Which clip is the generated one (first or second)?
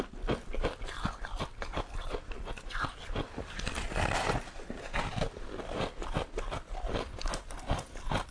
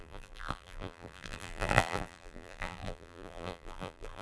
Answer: second